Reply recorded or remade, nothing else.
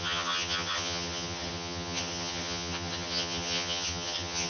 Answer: remade